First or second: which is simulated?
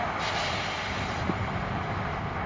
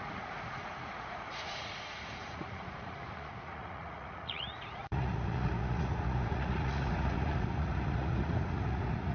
second